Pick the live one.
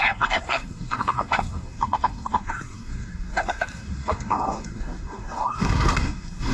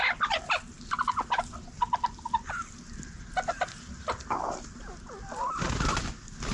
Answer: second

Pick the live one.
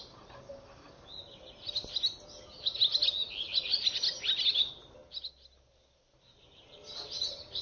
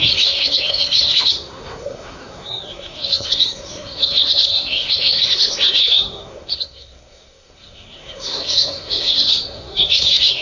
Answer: first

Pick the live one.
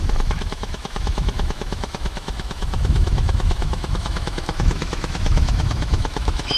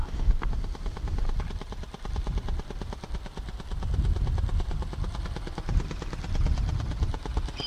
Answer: second